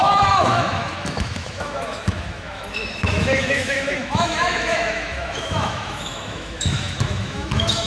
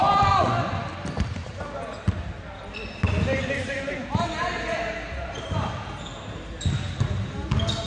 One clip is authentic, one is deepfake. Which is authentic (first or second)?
second